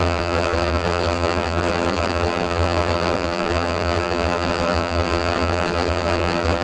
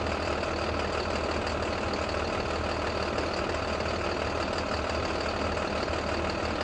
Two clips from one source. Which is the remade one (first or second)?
first